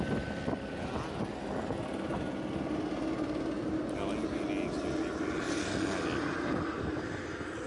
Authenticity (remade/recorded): recorded